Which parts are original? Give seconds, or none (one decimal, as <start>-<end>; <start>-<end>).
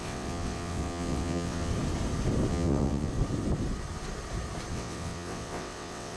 1.7-2.5; 3.1-4.7